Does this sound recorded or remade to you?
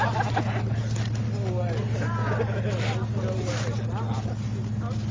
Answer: recorded